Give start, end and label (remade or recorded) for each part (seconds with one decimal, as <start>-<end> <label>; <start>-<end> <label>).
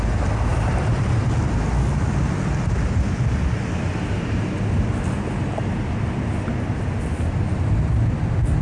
0.0-8.6 recorded